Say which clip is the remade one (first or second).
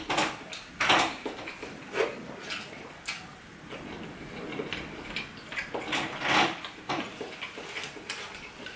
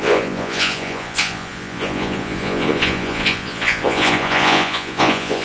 second